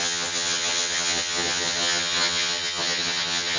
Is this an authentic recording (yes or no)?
no